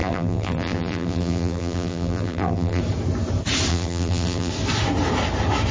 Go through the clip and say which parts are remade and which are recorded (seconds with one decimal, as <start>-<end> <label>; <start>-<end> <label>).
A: 0.0-2.8 remade; 2.8-3.7 recorded; 3.7-4.5 remade; 4.5-5.7 recorded